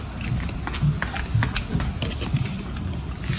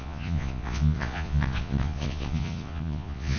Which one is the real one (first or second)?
first